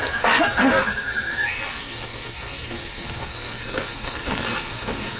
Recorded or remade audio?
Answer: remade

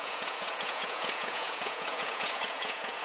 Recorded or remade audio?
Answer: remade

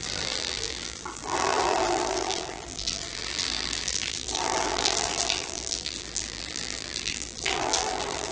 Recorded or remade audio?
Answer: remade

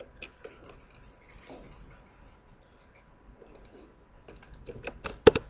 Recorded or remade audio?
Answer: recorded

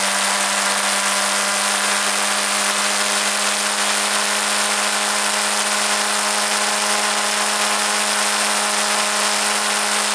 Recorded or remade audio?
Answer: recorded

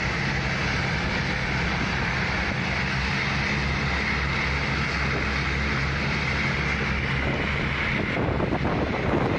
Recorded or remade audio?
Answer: recorded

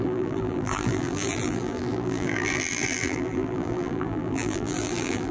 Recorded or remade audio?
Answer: remade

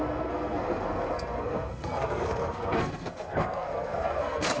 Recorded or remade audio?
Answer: remade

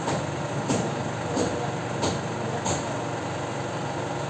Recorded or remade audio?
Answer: recorded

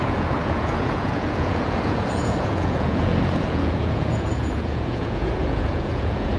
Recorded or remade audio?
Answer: remade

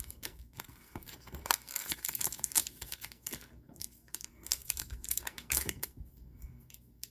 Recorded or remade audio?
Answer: remade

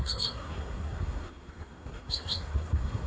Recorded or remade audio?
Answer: remade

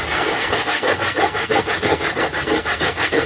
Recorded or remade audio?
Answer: remade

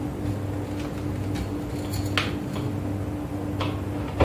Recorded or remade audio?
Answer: recorded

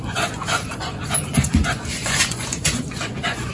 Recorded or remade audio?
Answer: remade